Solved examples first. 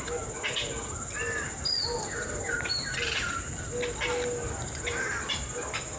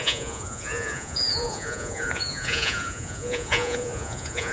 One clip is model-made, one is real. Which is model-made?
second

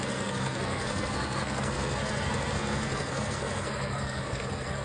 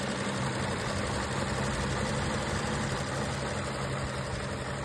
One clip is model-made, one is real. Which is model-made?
first